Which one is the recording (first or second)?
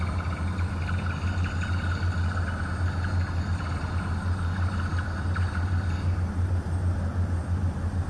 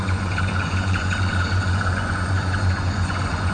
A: first